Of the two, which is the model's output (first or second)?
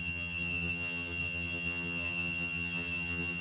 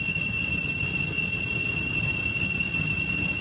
first